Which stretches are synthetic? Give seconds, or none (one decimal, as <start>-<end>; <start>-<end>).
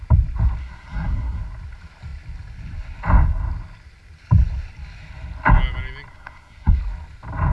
0.6-1.4; 6.1-6.8